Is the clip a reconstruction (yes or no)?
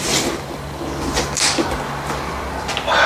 no